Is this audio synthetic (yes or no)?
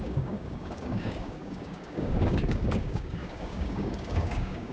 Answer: yes